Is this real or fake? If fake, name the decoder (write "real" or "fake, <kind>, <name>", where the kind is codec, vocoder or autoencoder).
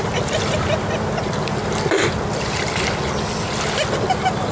real